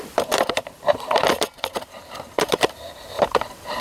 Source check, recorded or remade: remade